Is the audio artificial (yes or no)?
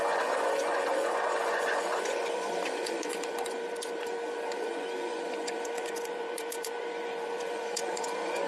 yes